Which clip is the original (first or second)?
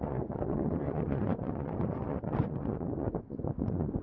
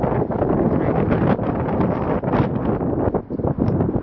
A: second